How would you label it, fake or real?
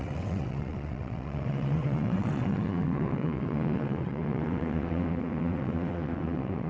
fake